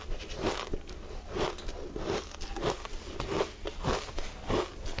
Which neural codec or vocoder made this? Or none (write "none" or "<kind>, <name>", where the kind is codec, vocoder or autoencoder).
none